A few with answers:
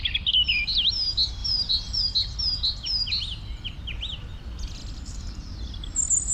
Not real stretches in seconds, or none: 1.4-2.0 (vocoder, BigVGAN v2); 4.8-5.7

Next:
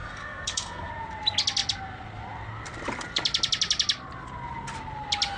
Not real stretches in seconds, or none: 0.0-0.9 (codec, SNAC)

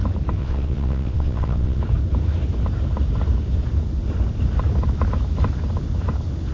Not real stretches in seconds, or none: 0.4-1.8 (vocoder, WaveNeXt)

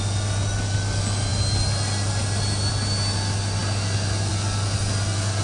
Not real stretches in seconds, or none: none

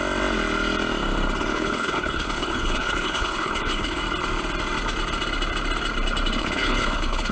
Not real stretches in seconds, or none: 1.5-4.0 (codec, HILCodec); 6.4-7.3

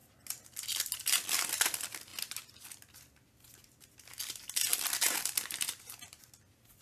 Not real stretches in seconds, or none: none

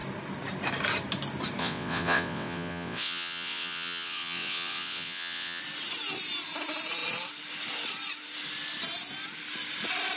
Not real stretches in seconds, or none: 1.6-5.6 (vocoder, WaveNeXt)

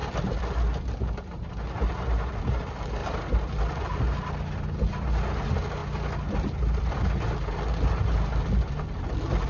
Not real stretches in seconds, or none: 3.0-3.6 (vocoder, BigVGAN v2)